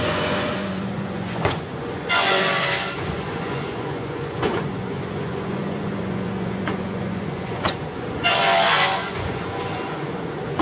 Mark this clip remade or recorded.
remade